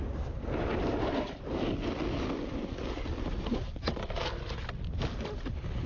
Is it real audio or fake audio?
real